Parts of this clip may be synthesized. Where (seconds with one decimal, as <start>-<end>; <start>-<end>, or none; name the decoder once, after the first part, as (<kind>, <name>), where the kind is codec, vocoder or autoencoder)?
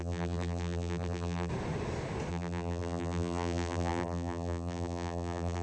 0.0-1.5 (vocoder, BigVGAN v2); 2.3-5.6